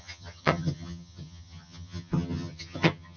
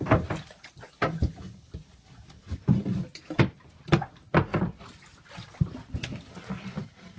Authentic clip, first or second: second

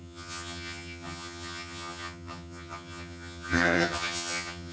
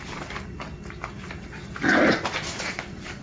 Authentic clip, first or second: second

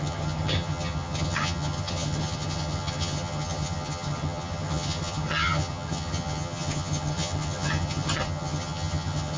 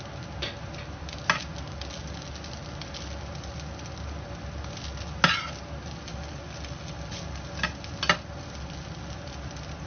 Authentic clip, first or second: second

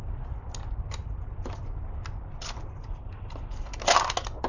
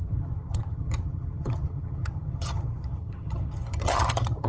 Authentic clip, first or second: first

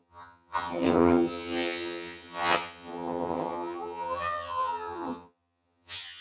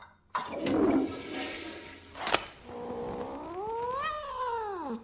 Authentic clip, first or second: second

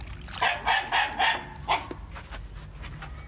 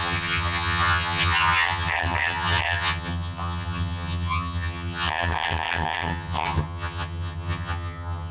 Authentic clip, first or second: first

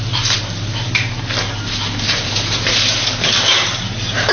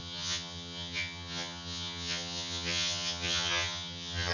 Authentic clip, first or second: first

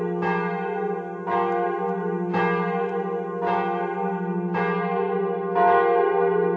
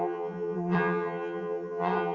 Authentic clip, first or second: first